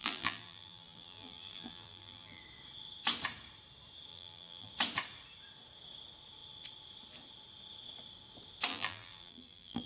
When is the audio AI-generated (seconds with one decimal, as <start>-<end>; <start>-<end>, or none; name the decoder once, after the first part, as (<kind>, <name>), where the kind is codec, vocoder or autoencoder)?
0.0-2.4 (vocoder, BigVGAN v2); 4.1-4.7; 8.7-9.9